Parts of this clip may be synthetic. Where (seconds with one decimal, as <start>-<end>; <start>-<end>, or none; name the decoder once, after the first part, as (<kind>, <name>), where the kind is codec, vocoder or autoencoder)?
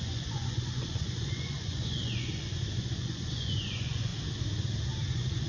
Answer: 0.0-4.1 (vocoder, Vocos); 5.1-5.5